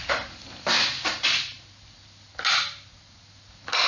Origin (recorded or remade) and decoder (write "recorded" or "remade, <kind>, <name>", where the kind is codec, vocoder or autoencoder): recorded